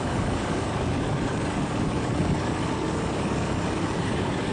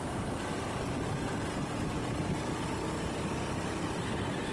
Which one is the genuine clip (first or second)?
second